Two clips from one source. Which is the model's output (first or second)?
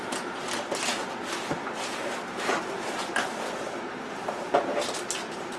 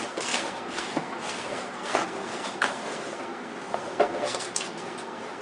second